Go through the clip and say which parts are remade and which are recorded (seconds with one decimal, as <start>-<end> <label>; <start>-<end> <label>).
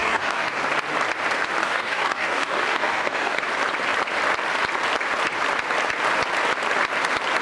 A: 0.0-0.6 remade; 0.6-1.6 recorded; 1.6-3.4 remade; 3.4-7.4 recorded